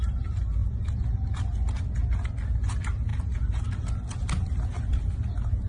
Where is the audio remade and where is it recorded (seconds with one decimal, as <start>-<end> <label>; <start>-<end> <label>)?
0.0-5.7 recorded